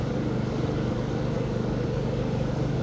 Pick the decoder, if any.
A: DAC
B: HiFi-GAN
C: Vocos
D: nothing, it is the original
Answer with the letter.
A